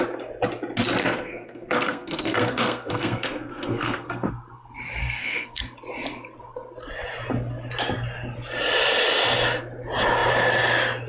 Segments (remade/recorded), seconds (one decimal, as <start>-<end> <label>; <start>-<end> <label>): 0.0-1.0 recorded; 1.0-4.3 remade; 4.3-5.0 recorded; 5.0-5.6 remade; 5.6-11.1 recorded